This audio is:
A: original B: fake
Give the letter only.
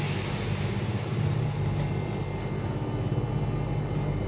A